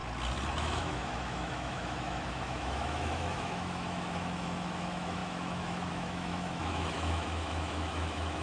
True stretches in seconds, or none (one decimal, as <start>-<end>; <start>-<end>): 0.0-0.5